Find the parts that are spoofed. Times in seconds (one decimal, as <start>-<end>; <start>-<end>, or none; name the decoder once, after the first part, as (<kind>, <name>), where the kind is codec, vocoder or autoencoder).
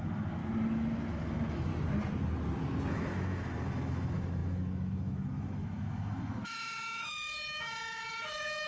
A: 0.0-0.4 (autoencoder, DAC-VAE); 1.1-1.7; 2.9-8.7